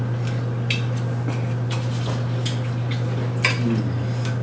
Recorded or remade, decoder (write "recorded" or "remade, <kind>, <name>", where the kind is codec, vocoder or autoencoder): recorded